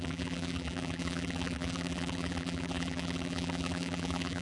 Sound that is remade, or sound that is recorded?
remade